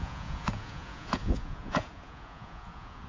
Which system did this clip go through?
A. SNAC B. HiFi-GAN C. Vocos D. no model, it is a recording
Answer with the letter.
C